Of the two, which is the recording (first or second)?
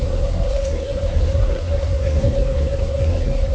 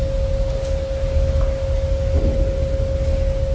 second